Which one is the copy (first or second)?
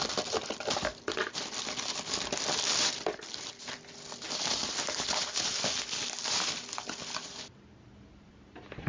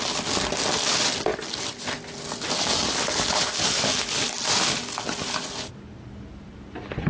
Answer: first